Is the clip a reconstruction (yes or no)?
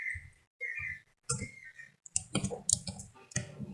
no